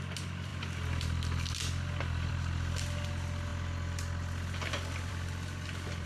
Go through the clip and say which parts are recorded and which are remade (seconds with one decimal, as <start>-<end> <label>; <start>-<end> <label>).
0.0-6.1 recorded